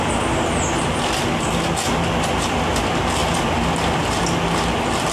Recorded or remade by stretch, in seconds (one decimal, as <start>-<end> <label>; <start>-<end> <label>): 0.0-5.1 recorded